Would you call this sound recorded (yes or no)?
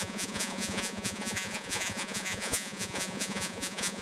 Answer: no